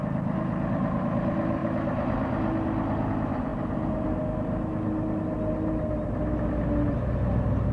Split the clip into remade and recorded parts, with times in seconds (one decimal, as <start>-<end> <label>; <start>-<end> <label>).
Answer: 0.0-7.7 recorded